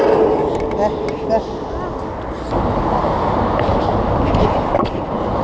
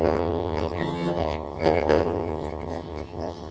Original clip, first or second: first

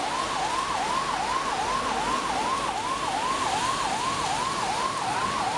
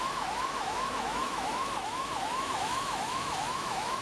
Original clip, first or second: first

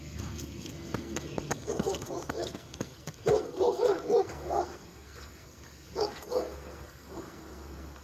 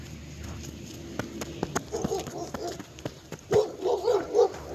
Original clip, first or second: second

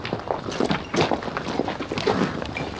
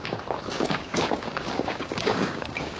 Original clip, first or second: first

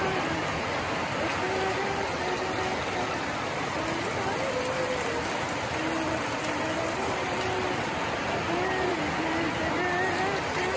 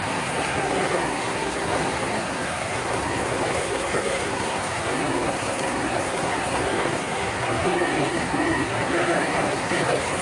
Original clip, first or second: first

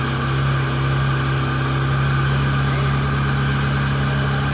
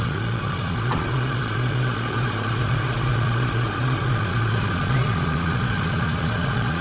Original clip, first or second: first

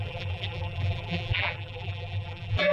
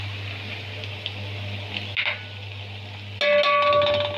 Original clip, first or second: second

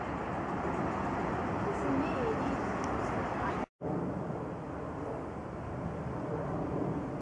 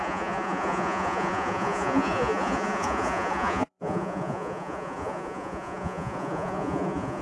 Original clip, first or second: first